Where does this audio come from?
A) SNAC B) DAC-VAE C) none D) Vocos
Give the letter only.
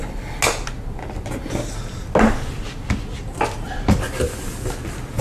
C